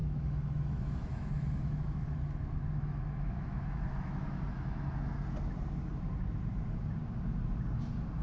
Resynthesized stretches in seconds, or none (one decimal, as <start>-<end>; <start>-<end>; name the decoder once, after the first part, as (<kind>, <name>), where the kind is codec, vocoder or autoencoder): 0.0-4.9 (autoencoder, DAC-VAE)